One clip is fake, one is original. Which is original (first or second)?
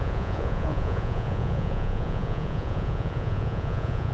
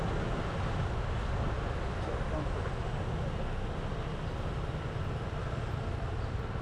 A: second